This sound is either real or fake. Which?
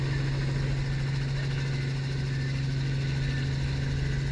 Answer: real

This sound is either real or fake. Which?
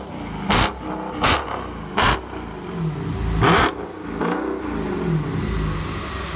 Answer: real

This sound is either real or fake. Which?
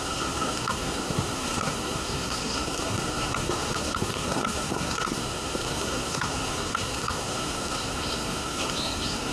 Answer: fake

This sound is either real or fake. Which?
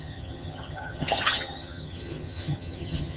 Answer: fake